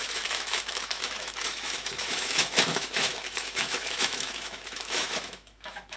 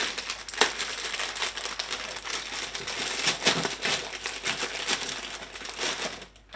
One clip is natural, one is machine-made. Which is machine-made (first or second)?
first